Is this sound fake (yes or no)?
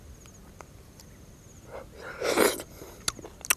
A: no